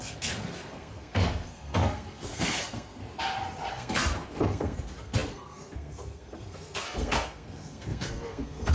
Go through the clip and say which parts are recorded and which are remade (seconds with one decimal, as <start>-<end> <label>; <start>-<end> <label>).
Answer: 0.0-3.0 remade; 3.0-3.7 recorded; 3.7-8.7 remade